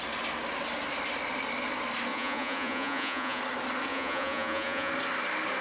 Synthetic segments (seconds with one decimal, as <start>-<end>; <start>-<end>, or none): 2.1-3.4; 3.9-4.9